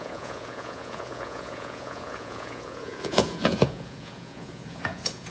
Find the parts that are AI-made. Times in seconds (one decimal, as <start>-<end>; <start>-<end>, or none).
0.0-5.3